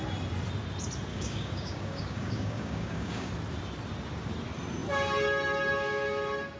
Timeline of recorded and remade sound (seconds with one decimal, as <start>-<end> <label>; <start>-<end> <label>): 0.0-1.1 recorded; 1.1-3.3 remade; 3.3-6.6 recorded